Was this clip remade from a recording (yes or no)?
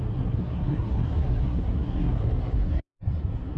yes